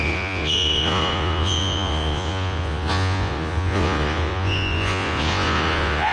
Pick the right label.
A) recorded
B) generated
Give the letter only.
B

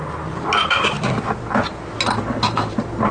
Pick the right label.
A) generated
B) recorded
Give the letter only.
B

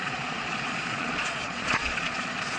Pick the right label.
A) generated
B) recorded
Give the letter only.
A